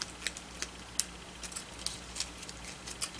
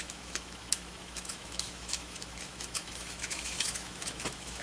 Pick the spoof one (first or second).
second